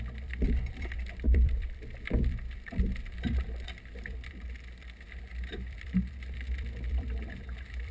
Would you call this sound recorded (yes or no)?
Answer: no